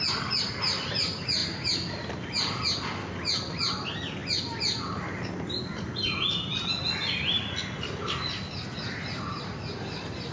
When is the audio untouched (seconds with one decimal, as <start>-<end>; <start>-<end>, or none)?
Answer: 0.0-10.3